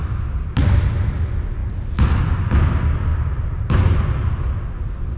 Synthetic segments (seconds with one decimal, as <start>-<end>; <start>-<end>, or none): none